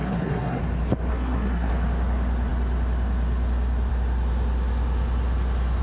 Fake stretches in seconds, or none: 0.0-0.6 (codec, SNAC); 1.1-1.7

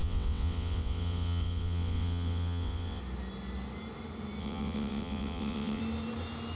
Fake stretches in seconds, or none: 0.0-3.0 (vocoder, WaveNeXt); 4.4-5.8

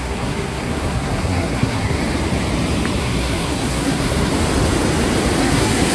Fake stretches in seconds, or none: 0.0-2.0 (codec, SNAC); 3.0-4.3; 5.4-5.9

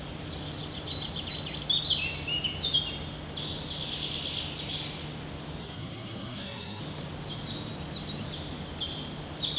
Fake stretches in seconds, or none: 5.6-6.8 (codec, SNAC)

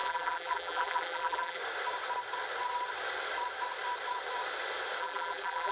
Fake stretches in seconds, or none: 0.0-1.6 (vocoder, BigVGAN v2); 5.0-5.7

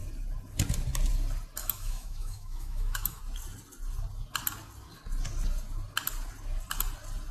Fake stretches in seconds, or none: 1.6-3.2 (autoencoder, DAC-VAE)

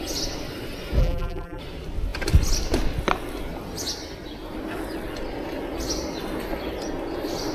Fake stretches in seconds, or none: 1.0-1.6 (vocoder, BigVGAN v2)

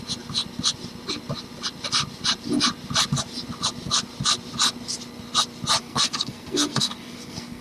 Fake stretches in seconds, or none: 5.8-7.6 (codec, SNAC)